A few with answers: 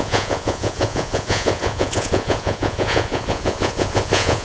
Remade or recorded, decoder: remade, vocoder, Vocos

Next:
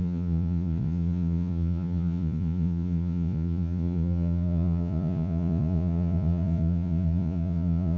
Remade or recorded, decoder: remade, vocoder, Vocos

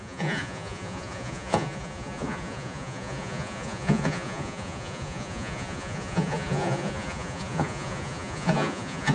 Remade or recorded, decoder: remade, vocoder, Vocos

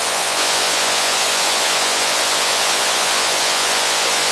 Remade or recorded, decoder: remade, vocoder, Vocos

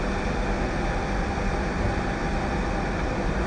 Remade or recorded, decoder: recorded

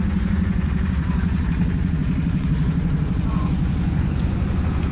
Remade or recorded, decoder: remade, vocoder, Vocos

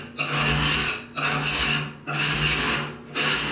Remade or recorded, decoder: recorded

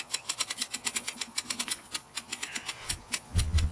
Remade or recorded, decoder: remade, vocoder, Vocos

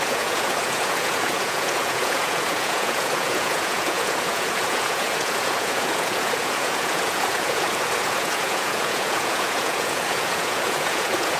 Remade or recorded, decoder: remade, vocoder, Vocos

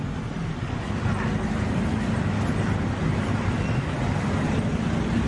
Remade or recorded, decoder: recorded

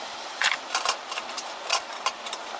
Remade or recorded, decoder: recorded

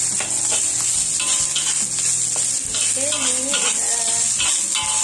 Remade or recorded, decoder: recorded